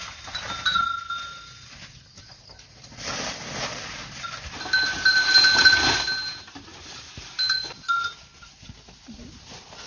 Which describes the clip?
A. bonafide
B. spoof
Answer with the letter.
A